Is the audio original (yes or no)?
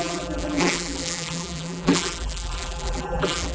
no